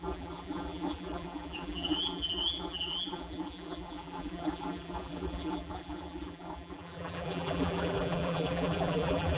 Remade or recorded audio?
remade